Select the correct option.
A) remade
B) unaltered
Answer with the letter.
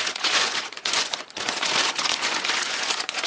A